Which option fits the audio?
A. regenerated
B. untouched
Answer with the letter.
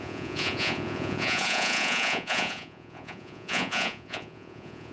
A